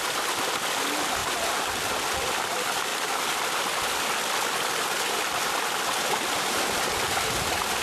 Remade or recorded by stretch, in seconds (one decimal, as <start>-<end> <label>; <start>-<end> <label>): 0.0-1.2 recorded; 1.2-2.5 remade; 2.5-7.8 recorded